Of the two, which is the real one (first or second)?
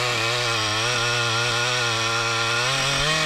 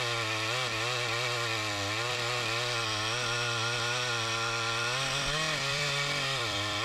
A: first